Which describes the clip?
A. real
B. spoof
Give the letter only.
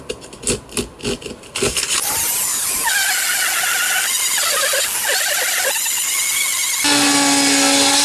A